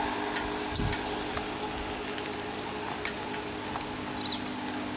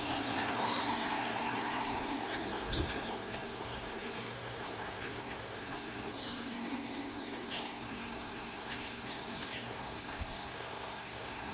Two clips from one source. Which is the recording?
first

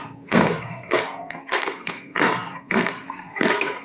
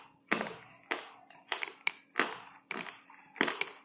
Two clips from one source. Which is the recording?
second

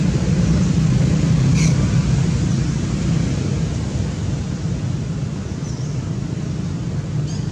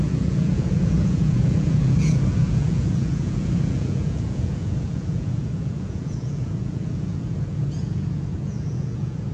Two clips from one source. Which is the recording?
first